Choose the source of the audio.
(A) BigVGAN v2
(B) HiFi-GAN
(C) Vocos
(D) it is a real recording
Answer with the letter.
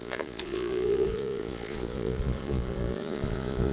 C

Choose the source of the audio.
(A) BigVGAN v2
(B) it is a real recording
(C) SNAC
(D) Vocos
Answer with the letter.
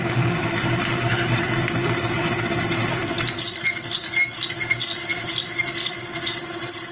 B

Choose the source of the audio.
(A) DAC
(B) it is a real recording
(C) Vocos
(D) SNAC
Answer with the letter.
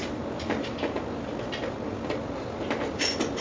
B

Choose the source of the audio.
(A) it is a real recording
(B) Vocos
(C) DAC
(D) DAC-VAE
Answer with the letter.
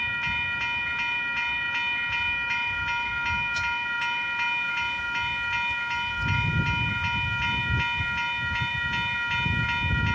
A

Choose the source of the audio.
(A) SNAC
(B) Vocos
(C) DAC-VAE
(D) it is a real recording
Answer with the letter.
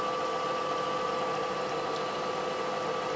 D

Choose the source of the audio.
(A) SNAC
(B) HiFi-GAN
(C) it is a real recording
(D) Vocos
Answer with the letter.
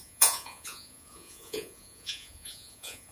D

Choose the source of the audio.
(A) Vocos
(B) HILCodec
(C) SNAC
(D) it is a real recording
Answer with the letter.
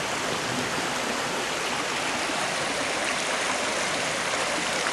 D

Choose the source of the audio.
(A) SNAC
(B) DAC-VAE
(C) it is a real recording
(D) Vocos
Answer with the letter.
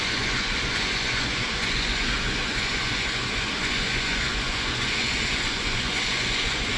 D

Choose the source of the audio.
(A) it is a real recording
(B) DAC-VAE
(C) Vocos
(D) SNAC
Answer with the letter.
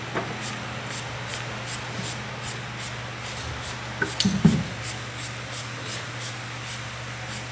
A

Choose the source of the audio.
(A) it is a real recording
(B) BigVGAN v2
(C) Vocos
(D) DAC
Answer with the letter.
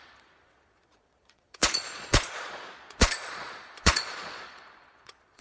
C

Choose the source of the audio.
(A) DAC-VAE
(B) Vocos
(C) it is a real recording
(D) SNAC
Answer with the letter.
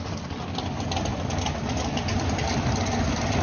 C